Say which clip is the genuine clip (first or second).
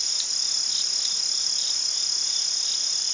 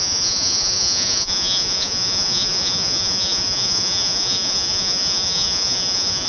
first